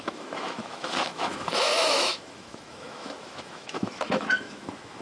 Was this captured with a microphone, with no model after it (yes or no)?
no